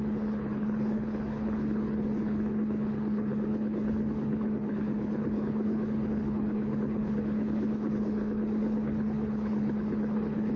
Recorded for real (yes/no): no